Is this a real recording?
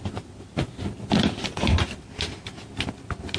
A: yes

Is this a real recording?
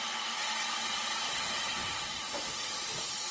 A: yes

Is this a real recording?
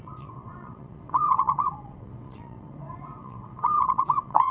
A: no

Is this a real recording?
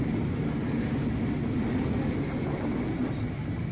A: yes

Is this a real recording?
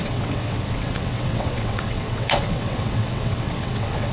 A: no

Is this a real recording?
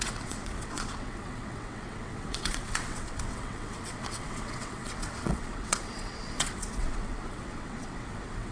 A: no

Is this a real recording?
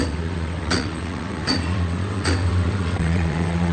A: no